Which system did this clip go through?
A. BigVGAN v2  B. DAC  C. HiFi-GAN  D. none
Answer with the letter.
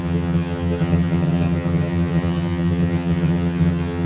C